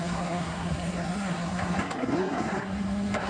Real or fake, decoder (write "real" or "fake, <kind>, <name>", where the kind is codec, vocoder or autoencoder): fake, codec, SNAC